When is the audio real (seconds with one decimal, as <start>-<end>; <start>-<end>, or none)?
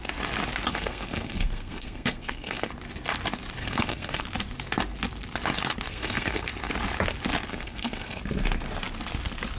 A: 0.0-0.7; 2.7-3.6; 4.2-5.9; 6.5-7.5; 8.2-9.6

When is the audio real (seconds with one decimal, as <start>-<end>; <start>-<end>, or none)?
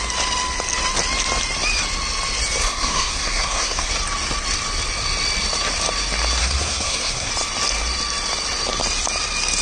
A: 0.0-2.6; 3.9-6.4; 7.3-9.6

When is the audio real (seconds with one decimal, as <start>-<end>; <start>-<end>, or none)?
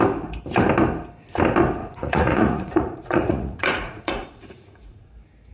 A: 0.0-1.8; 5.1-5.5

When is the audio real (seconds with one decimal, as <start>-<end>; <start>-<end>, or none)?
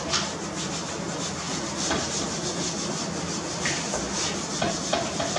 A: 0.0-5.4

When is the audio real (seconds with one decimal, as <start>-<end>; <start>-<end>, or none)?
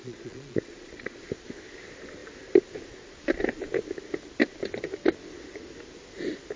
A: 1.2-6.6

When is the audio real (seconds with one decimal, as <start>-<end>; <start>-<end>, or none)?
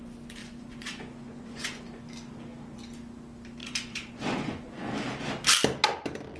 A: 0.0-0.4; 1.8-3.6; 4.9-6.4